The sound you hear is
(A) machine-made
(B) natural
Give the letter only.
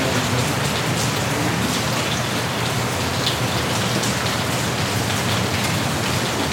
B